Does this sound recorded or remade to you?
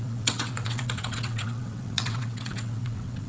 remade